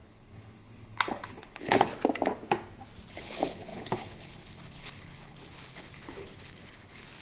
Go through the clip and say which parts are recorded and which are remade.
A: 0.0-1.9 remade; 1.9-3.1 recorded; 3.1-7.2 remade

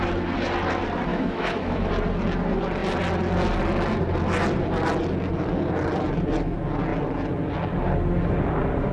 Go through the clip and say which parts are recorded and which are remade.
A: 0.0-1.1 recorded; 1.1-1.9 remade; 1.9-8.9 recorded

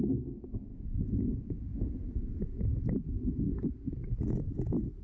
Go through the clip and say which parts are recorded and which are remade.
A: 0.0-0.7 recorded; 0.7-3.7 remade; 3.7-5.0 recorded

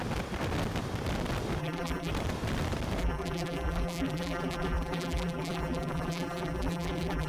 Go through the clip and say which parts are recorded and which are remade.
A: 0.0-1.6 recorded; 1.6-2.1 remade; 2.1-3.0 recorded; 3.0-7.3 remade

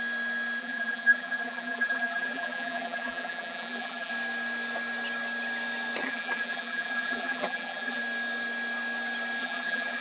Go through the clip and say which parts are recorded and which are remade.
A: 0.0-0.6 recorded; 0.6-4.1 remade; 4.1-6.0 recorded; 6.0-8.0 remade; 8.0-9.4 recorded; 9.4-10.0 remade

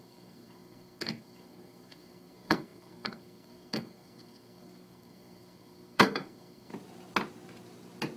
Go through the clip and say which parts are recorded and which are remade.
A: 0.0-6.7 remade; 6.7-8.2 recorded